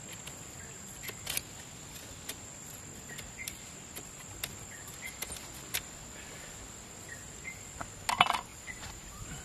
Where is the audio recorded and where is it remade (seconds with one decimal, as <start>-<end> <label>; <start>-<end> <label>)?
0.0-8.5 recorded; 8.5-9.4 remade